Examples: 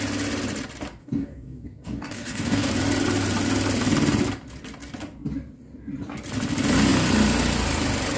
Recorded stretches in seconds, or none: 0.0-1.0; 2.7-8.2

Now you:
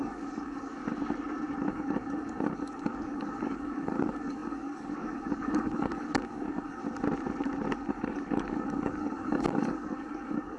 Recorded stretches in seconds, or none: 0.8-1.7; 6.8-7.9

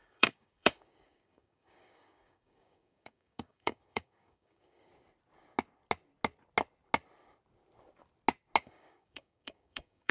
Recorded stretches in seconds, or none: 4.9-8.6

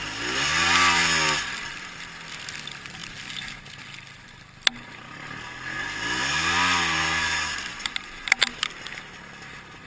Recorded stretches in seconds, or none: 0.0-9.9